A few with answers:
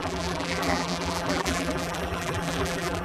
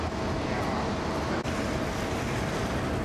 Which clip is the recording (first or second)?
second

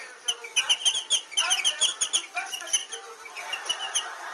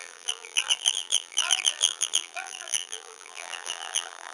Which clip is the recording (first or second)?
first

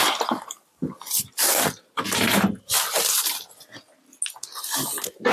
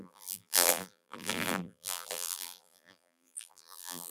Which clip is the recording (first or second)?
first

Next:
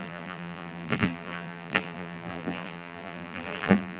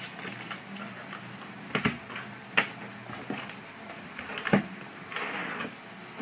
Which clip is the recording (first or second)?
second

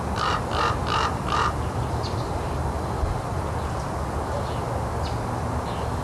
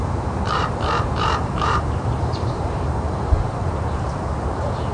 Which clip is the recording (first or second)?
first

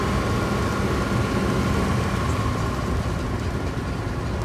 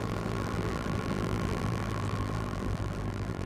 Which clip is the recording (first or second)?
first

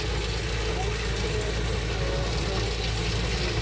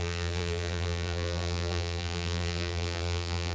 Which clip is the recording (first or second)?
first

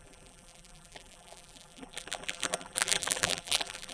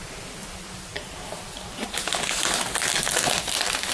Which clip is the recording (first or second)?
second